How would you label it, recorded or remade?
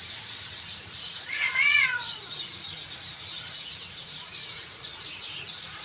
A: remade